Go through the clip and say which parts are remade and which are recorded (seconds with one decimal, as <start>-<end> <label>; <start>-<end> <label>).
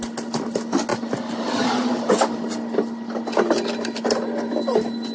0.0-5.1 recorded